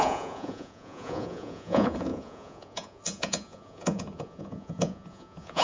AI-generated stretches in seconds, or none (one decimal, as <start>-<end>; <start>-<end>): 0.0-5.6